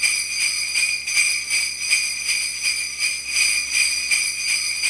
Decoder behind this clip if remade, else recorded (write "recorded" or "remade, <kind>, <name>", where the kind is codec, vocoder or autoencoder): recorded